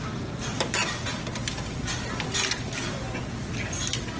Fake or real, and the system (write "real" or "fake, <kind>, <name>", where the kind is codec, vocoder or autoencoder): real